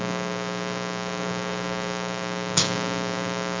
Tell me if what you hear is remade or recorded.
remade